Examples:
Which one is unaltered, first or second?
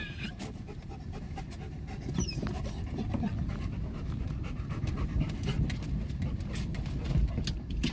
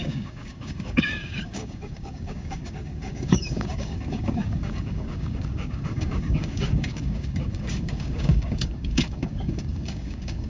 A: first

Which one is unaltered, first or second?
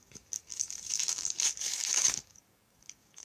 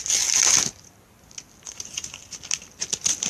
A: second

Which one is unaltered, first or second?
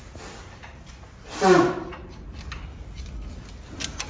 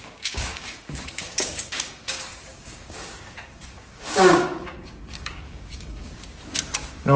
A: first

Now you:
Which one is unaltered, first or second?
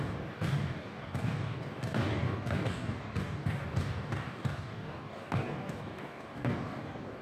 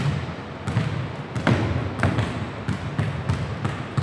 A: second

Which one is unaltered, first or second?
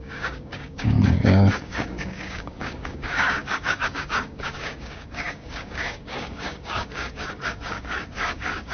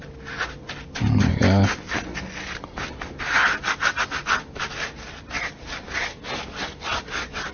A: second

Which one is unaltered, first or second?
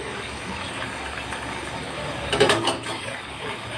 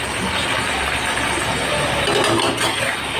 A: second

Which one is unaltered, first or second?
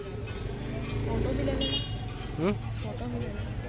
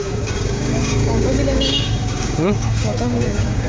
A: first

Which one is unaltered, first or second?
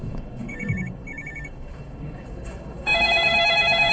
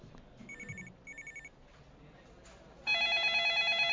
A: second